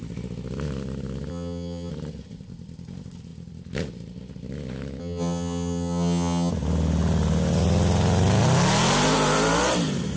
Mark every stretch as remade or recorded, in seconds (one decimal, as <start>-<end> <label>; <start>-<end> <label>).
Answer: 0.0-1.3 recorded; 1.3-1.9 remade; 1.9-5.0 recorded; 5.0-6.5 remade; 6.5-10.2 recorded